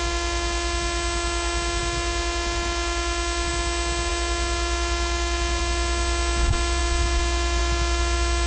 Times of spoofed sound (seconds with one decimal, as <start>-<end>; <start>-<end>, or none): none